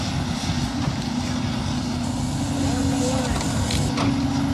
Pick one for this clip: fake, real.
real